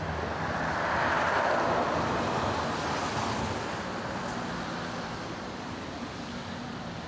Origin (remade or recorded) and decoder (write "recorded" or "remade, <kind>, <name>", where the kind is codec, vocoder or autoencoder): recorded